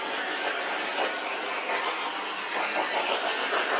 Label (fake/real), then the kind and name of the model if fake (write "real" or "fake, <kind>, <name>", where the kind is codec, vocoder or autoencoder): real